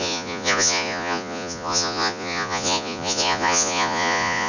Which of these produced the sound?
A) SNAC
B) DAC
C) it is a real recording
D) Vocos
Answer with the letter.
D